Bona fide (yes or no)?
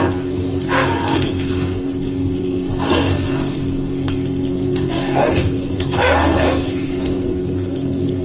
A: no